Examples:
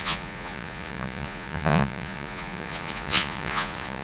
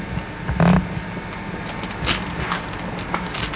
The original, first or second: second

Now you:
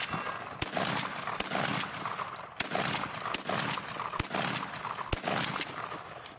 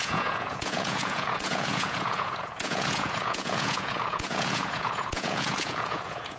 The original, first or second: first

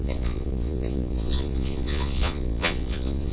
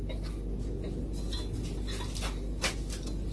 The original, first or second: second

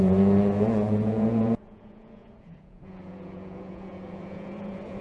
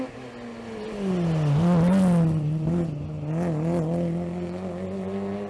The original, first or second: second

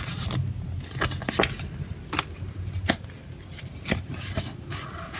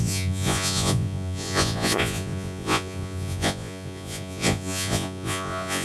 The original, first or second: first